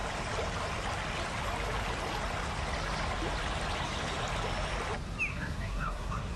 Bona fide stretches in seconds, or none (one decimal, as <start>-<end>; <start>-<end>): 0.0-5.3